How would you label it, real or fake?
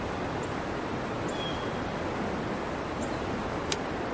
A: real